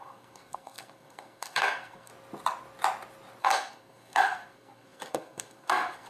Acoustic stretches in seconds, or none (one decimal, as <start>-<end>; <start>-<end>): 2.1-3.4